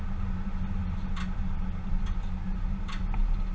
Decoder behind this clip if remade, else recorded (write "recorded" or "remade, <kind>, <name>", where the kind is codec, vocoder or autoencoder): recorded